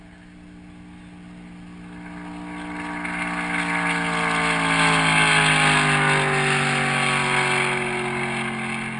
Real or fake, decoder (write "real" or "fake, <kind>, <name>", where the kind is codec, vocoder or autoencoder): real